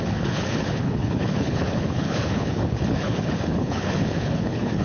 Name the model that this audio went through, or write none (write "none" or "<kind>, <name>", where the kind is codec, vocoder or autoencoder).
codec, HILCodec